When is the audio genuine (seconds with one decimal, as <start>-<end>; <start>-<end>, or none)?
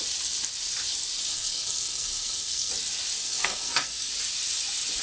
0.0-1.3; 2.7-3.2; 4.1-5.0